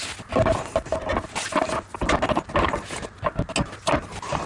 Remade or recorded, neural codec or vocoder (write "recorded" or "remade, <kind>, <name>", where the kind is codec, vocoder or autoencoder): recorded